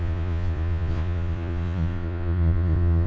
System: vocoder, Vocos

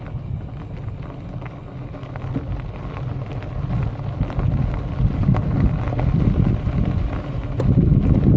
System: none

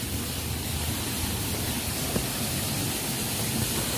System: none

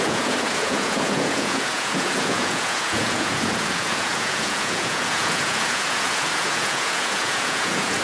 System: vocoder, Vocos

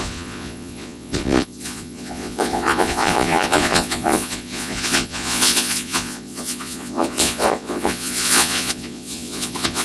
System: vocoder, Vocos